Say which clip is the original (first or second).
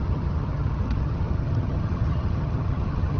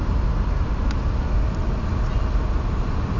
second